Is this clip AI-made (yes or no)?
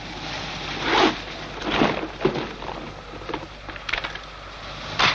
yes